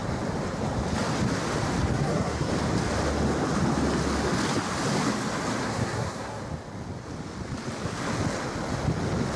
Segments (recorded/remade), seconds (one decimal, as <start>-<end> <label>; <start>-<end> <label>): 0.0-1.9 recorded; 1.9-2.5 remade; 2.5-5.6 recorded; 5.6-6.4 remade; 6.4-9.4 recorded